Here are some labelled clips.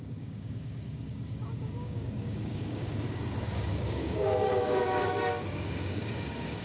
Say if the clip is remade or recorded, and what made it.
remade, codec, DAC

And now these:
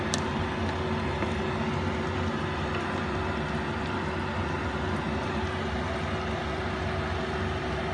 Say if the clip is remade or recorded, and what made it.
recorded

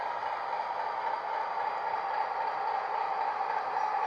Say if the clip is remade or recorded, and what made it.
recorded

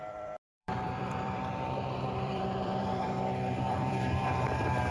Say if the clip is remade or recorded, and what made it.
remade, vocoder, BigVGAN v2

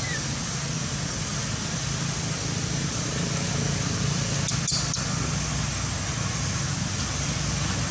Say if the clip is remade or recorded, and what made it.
recorded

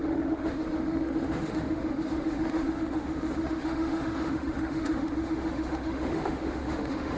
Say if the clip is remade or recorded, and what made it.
remade, autoencoder, DAC-VAE